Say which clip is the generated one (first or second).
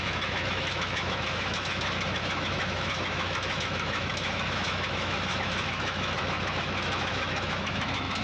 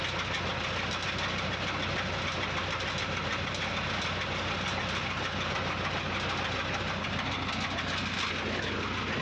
first